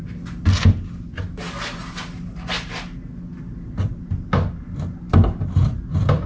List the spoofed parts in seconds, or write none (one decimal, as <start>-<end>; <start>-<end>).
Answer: none